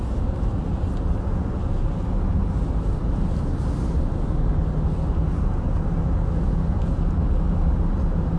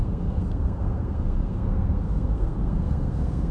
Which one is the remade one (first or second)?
second